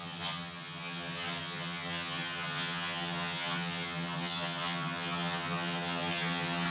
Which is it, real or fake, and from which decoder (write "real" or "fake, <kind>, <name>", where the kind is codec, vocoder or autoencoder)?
fake, vocoder, HiFi-GAN